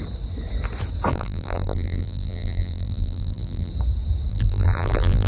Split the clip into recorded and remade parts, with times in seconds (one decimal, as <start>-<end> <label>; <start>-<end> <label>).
0.0-1.1 recorded; 1.1-3.7 remade; 3.7-4.3 recorded; 4.3-5.3 remade